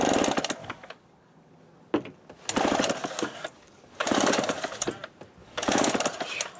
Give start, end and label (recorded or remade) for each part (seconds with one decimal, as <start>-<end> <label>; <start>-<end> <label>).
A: 0.0-0.6 recorded; 0.6-1.5 remade; 1.5-3.0 recorded; 3.0-4.9 remade; 4.9-5.4 recorded; 5.4-5.9 remade; 5.9-6.6 recorded